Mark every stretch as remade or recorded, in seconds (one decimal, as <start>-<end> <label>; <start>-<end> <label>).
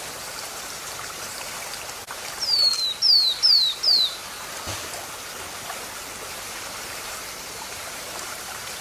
0.0-2.7 remade; 2.7-6.3 recorded; 6.3-8.8 remade